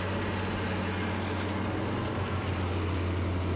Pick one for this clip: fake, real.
real